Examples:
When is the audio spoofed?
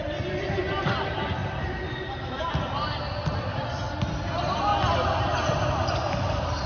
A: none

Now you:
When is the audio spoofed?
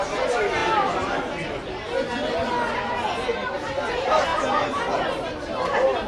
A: none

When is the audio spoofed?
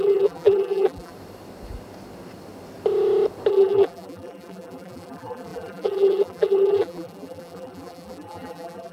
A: 0.0-1.1 (vocoder, BigVGAN v2); 3.5-8.9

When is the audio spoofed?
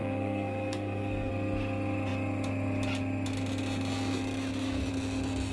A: 0.0-1.3 (codec, SNAC)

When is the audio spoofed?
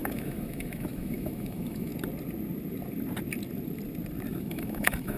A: 0.0-1.9 (autoencoder, DAC-VAE); 4.3-5.2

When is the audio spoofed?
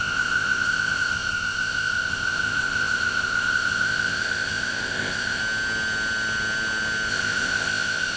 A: 0.0-5.4 (codec, ZipCodec); 7.1-8.2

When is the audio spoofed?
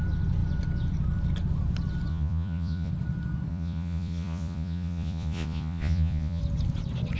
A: 2.1-2.9 (vocoder, Vocos); 3.5-6.4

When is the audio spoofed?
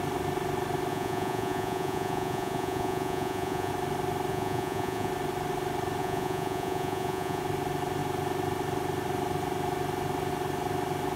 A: 0.9-3.7 (vocoder, Vocos); 4.3-5.1; 6.0-7.4